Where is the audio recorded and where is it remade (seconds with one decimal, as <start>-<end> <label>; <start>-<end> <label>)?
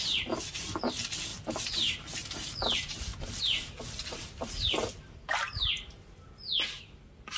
0.0-4.1 recorded; 4.1-6.0 remade; 6.0-7.4 recorded